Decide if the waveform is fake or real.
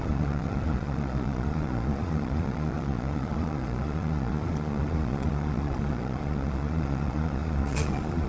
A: fake